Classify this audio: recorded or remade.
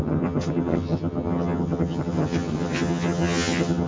remade